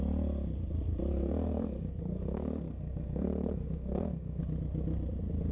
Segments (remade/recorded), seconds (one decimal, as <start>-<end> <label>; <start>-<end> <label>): 0.0-1.1 recorded; 1.1-4.4 remade; 4.4-5.5 recorded